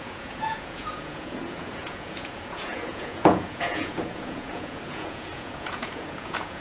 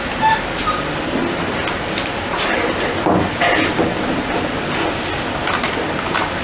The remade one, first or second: first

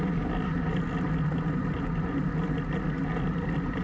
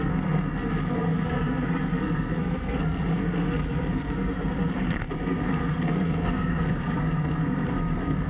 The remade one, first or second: second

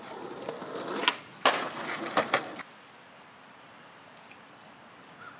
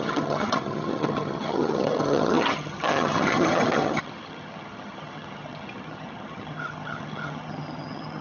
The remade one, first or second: second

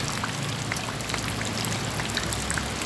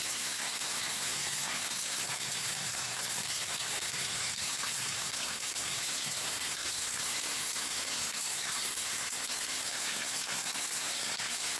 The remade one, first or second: second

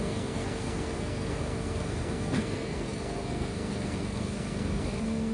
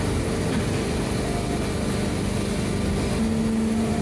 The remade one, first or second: first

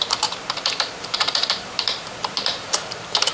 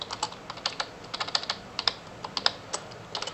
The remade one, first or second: first